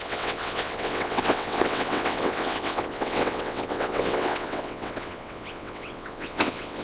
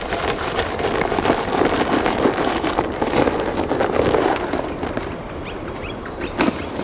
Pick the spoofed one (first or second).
first